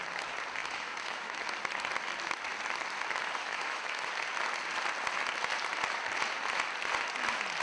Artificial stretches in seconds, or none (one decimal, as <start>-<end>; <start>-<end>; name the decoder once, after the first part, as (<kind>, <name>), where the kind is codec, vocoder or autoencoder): 0.6-1.4 (autoencoder, DAC-VAE); 3.4-4.1